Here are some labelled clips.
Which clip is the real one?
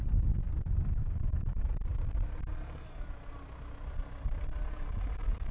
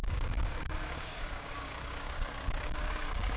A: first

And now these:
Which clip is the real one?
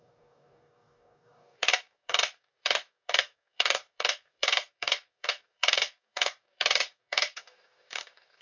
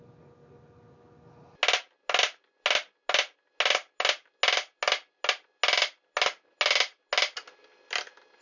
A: second